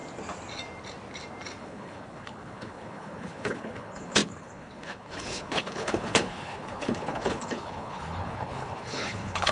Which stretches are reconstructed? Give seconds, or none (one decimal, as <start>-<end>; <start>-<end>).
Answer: 1.6-9.5